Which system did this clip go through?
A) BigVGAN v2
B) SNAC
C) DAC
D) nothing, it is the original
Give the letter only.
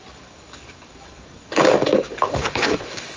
C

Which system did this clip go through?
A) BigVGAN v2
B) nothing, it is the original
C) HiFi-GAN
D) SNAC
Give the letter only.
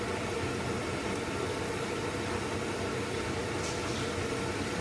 B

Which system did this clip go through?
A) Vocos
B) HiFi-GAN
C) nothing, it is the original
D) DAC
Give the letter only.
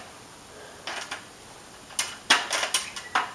C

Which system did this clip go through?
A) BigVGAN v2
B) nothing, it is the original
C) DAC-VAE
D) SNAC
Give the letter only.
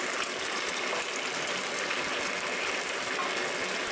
B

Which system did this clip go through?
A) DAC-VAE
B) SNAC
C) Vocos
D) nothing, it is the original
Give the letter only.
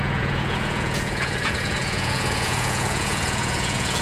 C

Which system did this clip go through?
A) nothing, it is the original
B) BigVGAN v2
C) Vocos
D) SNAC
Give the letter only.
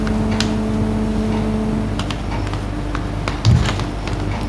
A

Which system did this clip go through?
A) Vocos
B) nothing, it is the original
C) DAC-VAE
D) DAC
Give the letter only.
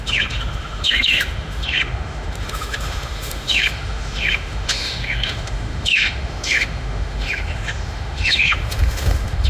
C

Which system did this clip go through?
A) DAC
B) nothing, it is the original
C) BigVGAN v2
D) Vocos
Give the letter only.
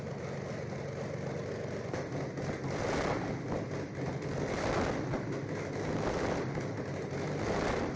B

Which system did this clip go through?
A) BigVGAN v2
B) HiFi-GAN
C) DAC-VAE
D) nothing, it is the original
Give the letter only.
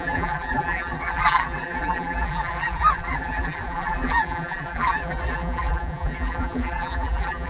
A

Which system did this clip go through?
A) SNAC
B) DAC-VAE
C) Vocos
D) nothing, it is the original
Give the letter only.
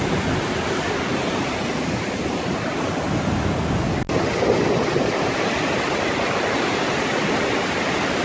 D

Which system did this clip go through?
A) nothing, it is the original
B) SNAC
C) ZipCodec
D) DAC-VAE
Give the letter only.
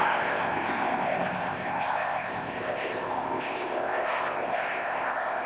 C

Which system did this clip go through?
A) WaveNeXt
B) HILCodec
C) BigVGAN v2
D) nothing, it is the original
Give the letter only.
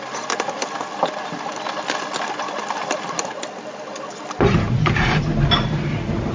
D